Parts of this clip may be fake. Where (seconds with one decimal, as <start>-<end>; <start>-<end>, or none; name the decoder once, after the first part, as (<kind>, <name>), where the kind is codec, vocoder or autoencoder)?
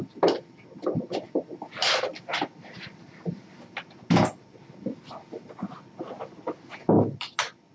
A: none